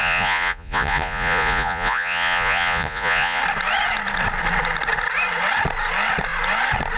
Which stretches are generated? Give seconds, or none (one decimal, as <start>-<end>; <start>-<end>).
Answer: 0.0-3.4